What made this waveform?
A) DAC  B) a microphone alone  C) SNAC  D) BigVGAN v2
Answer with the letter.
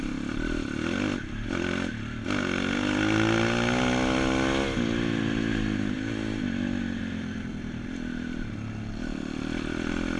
B